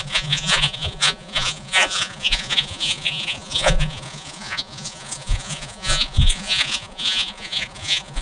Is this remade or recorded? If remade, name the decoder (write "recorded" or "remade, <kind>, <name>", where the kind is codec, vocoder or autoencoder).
remade, vocoder, Vocos